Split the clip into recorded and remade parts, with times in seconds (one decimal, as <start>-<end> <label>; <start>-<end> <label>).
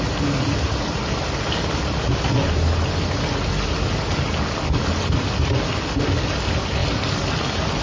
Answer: 0.0-7.8 recorded